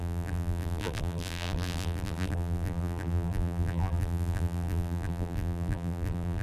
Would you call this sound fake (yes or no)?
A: yes